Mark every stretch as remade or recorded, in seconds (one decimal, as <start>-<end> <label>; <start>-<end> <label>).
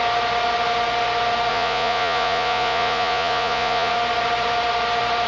0.0-1.5 recorded; 1.5-3.9 remade; 3.9-5.3 recorded